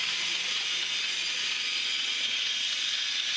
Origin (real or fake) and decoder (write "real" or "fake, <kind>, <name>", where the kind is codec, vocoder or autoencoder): real